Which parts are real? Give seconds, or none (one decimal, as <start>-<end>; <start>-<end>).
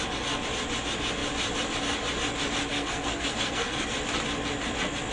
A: 0.0-2.7; 3.9-5.1